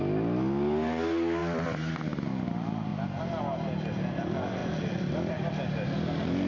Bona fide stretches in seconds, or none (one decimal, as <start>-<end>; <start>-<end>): 0.0-6.5